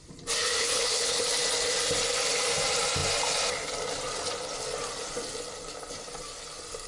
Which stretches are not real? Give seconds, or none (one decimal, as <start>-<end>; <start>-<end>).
0.6-1.2